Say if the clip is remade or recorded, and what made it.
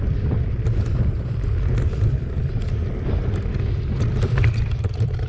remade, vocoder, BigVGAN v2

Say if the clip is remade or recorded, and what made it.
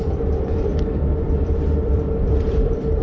remade, vocoder, BigVGAN v2